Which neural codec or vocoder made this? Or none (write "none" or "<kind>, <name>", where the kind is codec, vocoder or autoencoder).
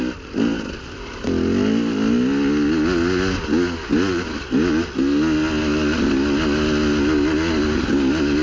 none